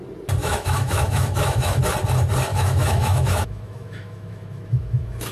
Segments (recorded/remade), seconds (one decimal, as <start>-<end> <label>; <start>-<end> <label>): 0.0-0.4 recorded; 0.4-1.8 remade; 1.8-2.5 recorded; 2.5-5.3 remade